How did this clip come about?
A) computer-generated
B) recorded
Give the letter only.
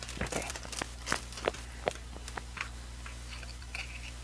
B